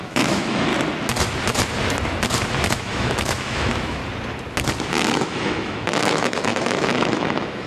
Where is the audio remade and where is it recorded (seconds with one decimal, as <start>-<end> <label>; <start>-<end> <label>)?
0.0-0.7 remade; 0.7-2.7 recorded; 2.7-4.0 remade; 4.0-4.9 recorded; 4.9-7.7 remade